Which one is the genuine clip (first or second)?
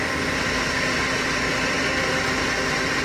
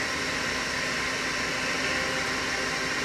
second